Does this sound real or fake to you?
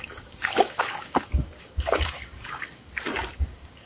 fake